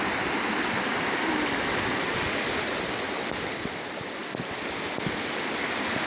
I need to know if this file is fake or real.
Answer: real